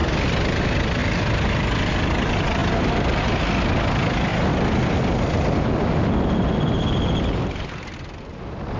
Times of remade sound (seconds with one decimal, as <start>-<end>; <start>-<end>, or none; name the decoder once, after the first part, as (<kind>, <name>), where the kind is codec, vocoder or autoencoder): none